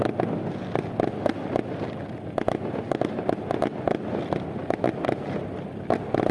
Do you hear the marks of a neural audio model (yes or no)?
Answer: no